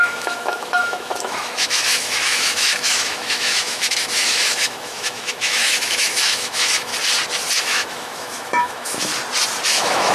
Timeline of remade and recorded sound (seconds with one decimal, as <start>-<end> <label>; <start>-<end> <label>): 0.0-6.9 remade; 6.9-7.6 recorded; 7.6-9.1 remade; 9.1-9.7 recorded; 9.7-10.1 remade